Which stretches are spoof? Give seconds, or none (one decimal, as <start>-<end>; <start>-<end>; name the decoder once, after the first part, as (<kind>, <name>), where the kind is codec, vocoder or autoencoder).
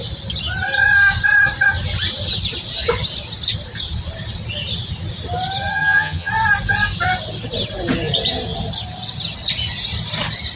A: 5.7-6.3 (vocoder, HiFi-GAN)